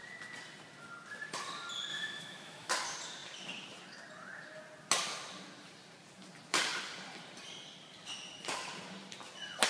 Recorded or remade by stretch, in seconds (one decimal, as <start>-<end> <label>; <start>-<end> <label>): 0.0-1.9 recorded; 1.9-2.7 remade; 2.7-9.7 recorded